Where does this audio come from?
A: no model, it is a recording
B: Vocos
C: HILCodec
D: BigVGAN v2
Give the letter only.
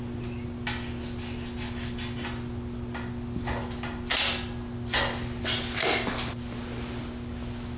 A